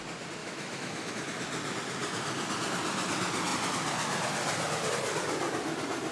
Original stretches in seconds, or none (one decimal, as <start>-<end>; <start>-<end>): 0.0-0.4; 1.1-6.1